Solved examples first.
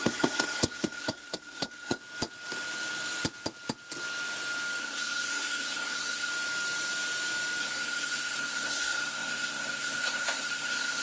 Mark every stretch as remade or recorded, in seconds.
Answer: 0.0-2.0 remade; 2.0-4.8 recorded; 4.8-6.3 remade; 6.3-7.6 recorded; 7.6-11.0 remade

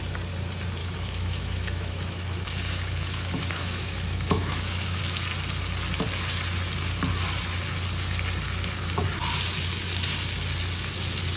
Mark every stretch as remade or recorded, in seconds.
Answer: 0.0-0.8 recorded; 0.8-5.0 remade; 5.0-11.4 recorded

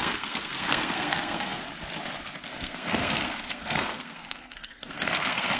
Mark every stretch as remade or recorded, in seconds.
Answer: 0.0-1.6 remade; 1.6-2.4 recorded; 2.4-5.6 remade

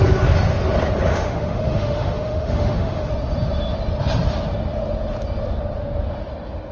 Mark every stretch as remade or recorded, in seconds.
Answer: 0.0-1.1 recorded; 1.1-3.1 remade; 3.1-6.7 recorded

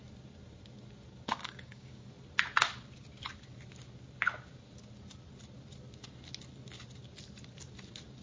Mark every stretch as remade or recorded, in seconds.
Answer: 0.0-1.4 recorded; 1.4-2.1 remade; 2.1-8.2 recorded

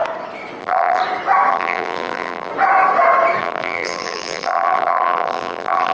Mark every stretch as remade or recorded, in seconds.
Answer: 0.0-0.6 recorded; 0.6-1.0 remade; 1.0-1.5 recorded; 1.5-2.5 remade; 2.5-3.4 recorded; 3.4-5.9 remade

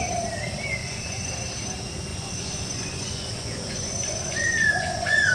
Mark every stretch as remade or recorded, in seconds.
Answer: 0.0-0.8 recorded; 0.8-1.3 remade; 1.3-2.1 recorded; 2.1-5.3 remade